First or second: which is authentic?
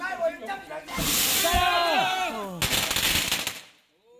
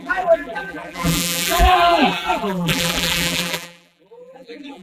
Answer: first